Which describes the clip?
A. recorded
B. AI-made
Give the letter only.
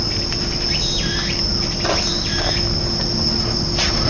A